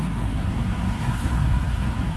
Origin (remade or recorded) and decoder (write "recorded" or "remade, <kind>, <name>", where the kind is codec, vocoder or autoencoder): remade, codec, SNAC